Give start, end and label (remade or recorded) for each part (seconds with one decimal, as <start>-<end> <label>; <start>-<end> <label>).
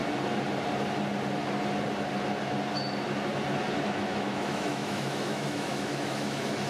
0.0-3.8 recorded; 3.8-6.7 remade